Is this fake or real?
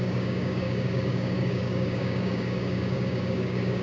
fake